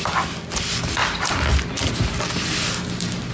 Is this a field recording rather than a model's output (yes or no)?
yes